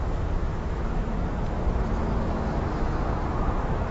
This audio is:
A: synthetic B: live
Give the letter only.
A